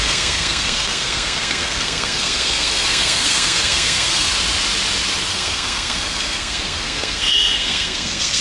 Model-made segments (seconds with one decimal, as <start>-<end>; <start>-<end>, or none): 0.0-4.3; 5.3-8.4